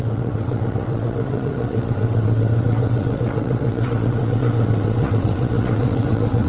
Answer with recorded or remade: remade